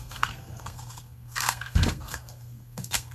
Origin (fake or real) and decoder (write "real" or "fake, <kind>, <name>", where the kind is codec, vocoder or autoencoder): fake, codec, SNAC